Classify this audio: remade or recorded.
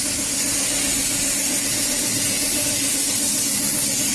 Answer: recorded